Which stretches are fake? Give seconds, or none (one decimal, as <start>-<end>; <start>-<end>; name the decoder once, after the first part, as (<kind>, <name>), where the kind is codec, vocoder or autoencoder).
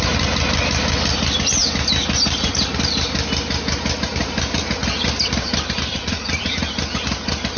5.9-6.7 (vocoder, Vocos)